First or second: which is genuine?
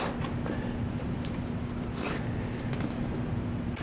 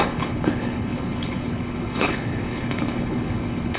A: first